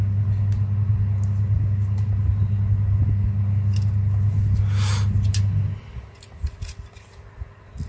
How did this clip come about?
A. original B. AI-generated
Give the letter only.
A